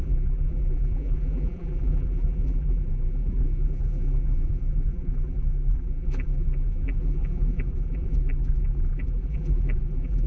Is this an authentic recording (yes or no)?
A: no